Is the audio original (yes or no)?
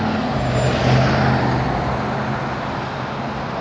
yes